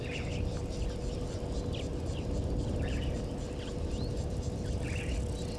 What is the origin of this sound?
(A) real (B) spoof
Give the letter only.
A